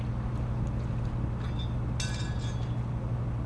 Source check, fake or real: real